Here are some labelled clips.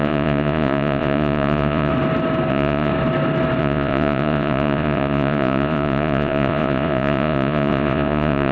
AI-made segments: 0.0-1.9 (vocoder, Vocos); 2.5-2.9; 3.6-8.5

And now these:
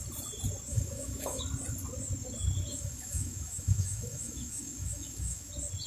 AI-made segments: 0.7-1.4 (autoencoder, DAC-VAE); 2.7-5.5

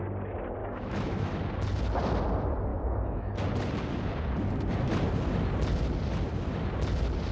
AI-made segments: 0.6-1.3 (autoencoder, DAC-VAE); 2.7-3.3

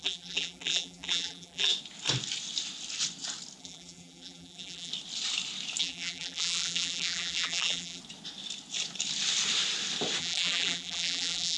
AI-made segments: 0.0-1.7 (vocoder, BigVGAN v2); 3.6-4.9; 5.8-8.0; 10.2-11.6

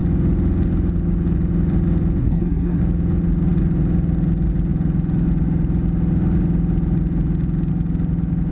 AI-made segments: 2.2-2.8 (codec, SNAC)